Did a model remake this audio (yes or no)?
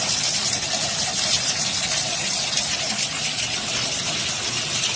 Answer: no